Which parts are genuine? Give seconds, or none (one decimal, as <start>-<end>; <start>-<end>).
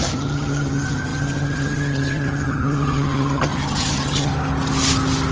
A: 4.3-5.3